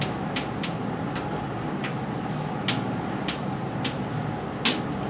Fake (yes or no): no